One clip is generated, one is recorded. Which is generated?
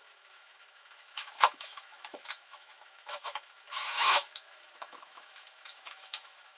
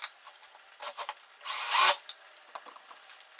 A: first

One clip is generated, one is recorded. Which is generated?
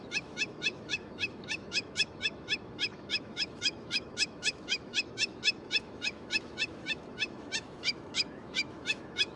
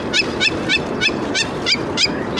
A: first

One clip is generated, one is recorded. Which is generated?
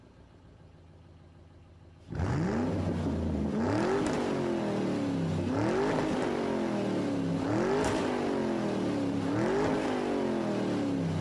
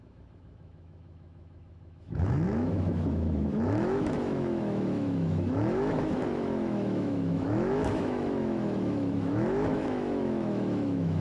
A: second